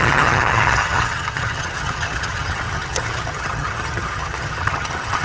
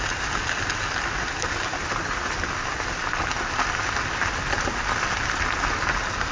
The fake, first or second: first